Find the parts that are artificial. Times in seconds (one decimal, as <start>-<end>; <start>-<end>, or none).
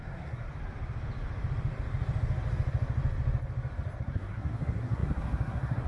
0.0-0.5; 4.0-5.9